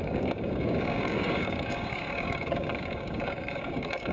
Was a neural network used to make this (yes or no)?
yes